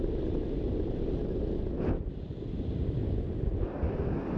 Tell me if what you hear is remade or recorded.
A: recorded